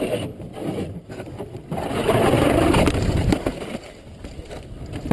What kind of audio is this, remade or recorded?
recorded